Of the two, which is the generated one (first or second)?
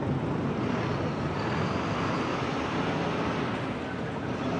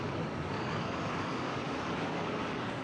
second